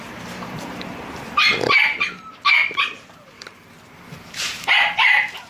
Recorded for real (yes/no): no